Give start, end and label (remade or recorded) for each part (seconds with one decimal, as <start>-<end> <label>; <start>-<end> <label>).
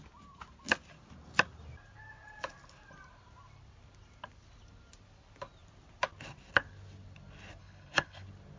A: 0.0-7.6 recorded; 7.6-8.2 remade; 8.2-8.6 recorded